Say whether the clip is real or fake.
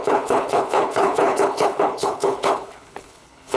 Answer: fake